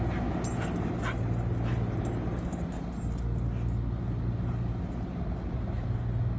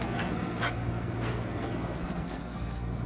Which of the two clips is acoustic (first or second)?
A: first